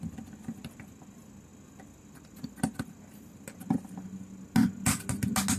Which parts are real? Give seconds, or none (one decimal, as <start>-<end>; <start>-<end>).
0.0-5.6